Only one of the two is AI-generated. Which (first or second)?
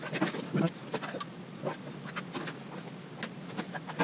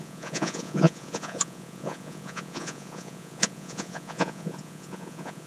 second